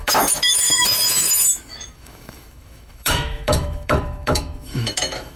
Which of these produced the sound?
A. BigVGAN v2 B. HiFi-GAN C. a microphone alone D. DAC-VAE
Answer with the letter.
D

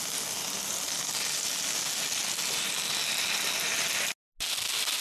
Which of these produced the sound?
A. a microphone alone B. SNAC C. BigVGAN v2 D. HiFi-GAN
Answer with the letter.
A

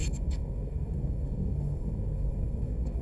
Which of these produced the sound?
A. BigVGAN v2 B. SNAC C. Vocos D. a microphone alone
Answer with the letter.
B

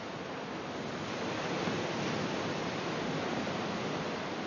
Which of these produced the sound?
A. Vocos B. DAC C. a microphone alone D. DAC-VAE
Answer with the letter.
C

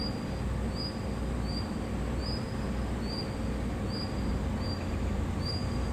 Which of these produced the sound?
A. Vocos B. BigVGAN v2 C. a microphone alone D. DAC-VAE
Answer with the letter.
C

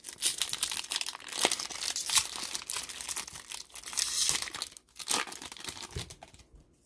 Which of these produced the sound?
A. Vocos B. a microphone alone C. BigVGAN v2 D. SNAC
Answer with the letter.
B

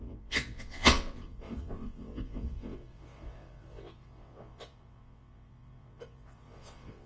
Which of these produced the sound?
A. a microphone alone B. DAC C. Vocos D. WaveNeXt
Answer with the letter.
D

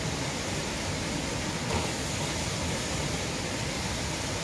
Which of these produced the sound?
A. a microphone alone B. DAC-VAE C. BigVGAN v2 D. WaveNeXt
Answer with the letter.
A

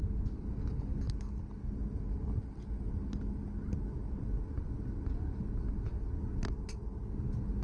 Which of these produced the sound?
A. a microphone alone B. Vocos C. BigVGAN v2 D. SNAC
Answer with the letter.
A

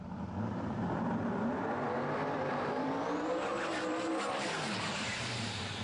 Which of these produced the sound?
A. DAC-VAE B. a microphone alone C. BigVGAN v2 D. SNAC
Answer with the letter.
C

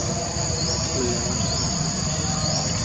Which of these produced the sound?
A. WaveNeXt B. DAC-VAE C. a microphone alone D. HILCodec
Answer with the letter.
C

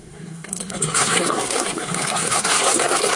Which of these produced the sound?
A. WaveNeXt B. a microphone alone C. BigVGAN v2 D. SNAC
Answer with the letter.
D